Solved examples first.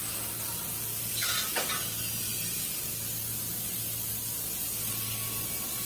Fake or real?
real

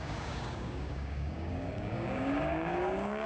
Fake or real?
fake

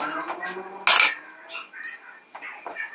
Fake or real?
real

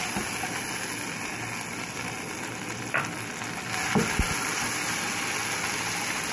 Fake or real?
real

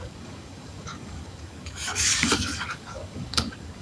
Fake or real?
fake